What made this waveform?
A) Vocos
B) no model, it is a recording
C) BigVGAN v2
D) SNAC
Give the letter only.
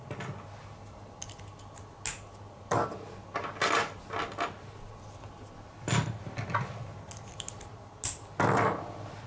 B